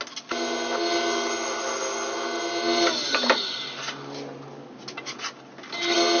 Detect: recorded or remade recorded